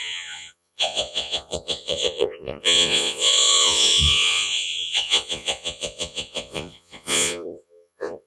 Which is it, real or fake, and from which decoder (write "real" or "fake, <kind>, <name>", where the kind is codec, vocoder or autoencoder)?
fake, vocoder, Vocos